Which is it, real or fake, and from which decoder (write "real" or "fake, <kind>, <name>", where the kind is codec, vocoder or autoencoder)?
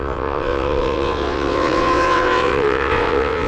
fake, vocoder, WaveNeXt